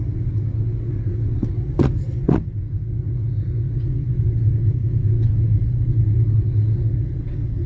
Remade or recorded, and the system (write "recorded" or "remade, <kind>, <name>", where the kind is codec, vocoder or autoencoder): remade, vocoder, WaveNeXt